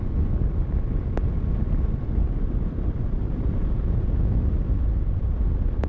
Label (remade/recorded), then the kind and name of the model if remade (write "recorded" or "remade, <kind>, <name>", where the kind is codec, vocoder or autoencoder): recorded